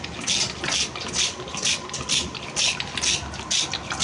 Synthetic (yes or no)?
no